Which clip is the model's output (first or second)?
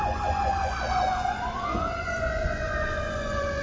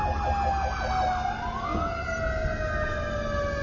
first